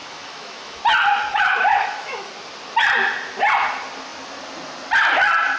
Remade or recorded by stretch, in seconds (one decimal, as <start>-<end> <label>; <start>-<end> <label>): 0.0-0.8 remade; 0.8-1.3 recorded; 1.3-2.3 remade; 2.3-5.6 recorded